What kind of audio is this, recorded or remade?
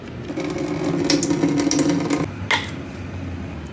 recorded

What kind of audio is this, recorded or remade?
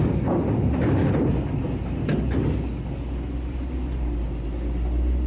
recorded